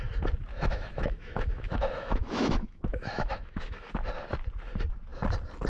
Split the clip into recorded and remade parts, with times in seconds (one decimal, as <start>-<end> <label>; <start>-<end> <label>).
0.0-0.5 recorded; 0.5-3.9 remade; 3.9-5.7 recorded